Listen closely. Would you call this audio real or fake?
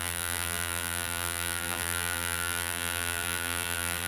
fake